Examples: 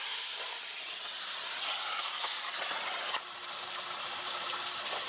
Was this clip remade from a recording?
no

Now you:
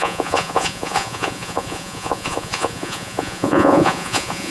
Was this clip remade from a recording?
yes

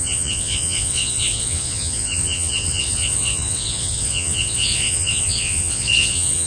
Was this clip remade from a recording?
yes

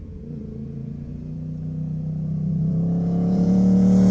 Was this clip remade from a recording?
yes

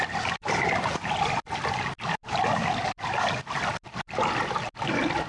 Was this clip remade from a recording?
no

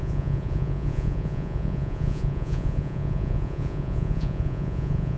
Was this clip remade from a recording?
yes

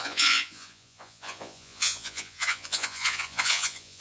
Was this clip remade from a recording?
yes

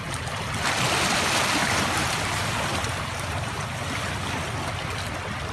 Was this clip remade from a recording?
no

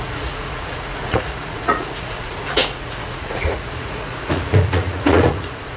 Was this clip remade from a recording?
yes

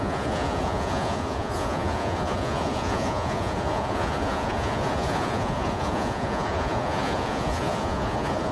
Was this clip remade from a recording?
yes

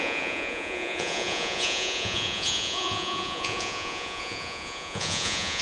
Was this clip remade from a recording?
yes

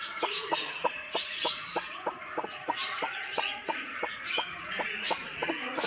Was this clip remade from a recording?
yes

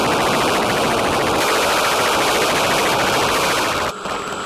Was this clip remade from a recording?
no